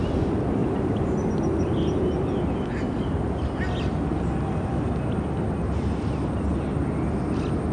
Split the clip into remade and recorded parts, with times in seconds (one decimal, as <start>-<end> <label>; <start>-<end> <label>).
0.0-7.7 recorded